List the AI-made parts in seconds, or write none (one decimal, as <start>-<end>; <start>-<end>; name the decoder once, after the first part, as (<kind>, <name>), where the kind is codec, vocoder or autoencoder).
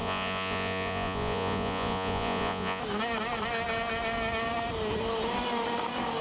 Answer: 0.0-2.8 (vocoder, Vocos)